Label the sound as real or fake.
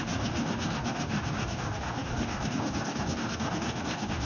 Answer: fake